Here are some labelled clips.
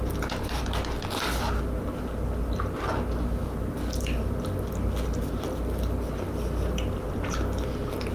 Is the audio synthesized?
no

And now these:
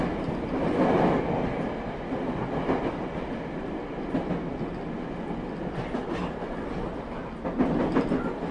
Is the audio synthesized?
no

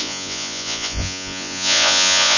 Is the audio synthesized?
yes